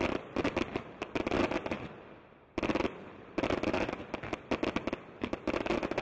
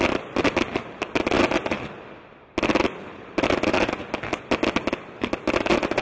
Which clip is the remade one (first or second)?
first